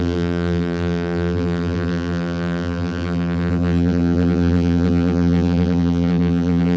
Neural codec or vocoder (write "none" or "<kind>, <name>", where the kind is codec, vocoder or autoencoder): vocoder, BigVGAN v2